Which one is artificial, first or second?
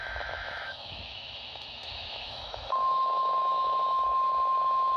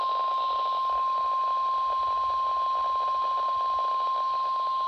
first